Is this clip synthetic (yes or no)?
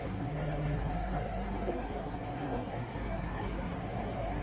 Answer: yes